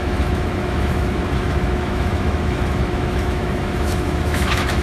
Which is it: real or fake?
fake